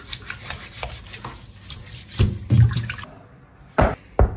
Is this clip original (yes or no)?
yes